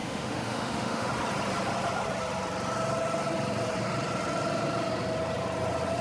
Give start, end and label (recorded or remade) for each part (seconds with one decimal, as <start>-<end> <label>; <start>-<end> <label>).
0.0-1.1 remade; 1.1-6.0 recorded